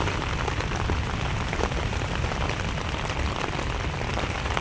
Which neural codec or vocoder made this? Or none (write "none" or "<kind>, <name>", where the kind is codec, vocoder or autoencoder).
none